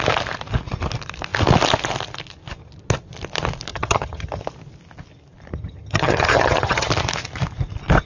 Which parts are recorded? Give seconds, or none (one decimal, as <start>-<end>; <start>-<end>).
0.0-3.7; 4.4-5.5; 6.9-8.1